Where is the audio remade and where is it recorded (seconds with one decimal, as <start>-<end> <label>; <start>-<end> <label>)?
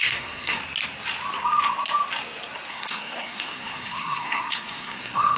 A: 0.0-0.6 remade; 0.6-2.7 recorded; 2.7-5.4 remade